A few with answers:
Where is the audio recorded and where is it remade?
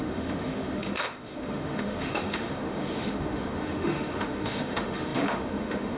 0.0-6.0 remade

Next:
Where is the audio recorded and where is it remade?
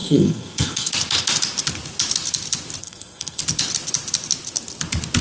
0.0-0.9 remade; 0.9-2.8 recorded; 2.8-3.4 remade; 3.4-5.2 recorded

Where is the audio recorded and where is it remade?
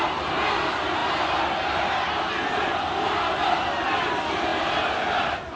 0.0-5.6 recorded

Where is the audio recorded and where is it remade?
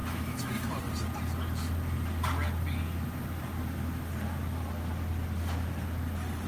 0.0-0.8 remade; 0.8-6.5 recorded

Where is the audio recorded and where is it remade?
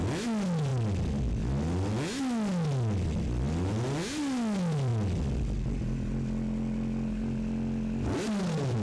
0.0-8.8 recorded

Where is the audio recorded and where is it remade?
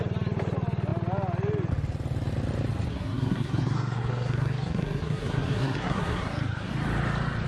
0.0-2.9 recorded; 2.9-6.7 remade; 6.7-7.5 recorded